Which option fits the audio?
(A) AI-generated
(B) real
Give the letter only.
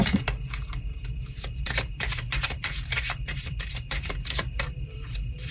A